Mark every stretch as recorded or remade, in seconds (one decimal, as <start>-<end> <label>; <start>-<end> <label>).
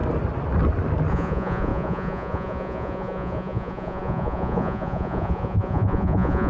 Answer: 0.0-1.1 recorded; 1.1-6.5 remade